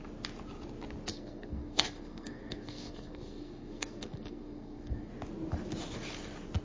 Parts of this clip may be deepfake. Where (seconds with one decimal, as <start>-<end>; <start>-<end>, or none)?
1.1-5.1